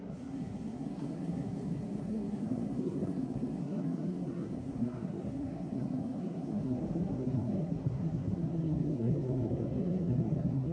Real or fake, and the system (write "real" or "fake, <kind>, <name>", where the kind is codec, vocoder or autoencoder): fake, codec, SNAC